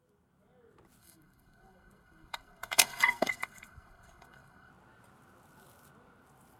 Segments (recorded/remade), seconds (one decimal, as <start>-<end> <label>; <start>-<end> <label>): 0.0-1.0 recorded; 1.0-4.7 remade; 4.7-6.6 recorded